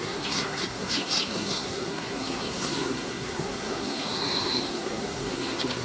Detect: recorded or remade remade